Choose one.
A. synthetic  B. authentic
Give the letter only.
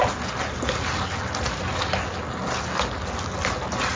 B